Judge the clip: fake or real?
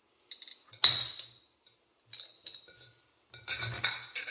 real